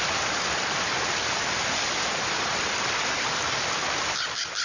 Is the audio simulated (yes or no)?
no